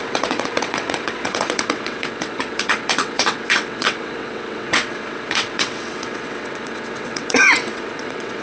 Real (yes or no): no